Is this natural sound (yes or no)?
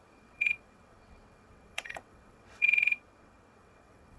no